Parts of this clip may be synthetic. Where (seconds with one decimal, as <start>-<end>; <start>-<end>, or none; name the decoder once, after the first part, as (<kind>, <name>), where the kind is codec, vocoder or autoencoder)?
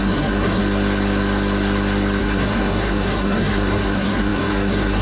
0.0-0.6 (codec, SNAC); 2.2-5.0